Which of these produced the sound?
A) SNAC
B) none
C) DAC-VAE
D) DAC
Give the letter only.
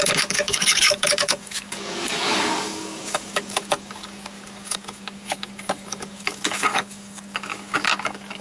D